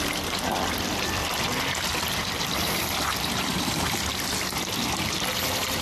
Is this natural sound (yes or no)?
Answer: yes